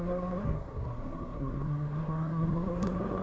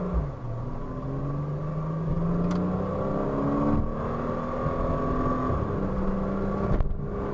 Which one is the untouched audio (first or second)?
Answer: second